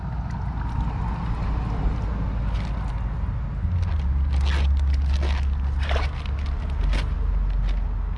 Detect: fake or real real